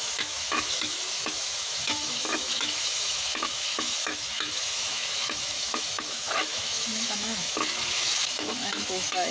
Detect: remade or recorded remade